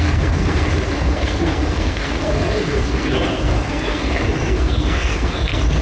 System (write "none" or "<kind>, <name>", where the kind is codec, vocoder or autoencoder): codec, SNAC